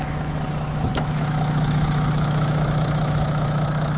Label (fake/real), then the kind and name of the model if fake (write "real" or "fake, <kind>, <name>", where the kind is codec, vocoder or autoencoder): fake, autoencoder, DAC-VAE